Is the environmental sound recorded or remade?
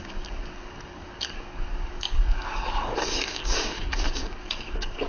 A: remade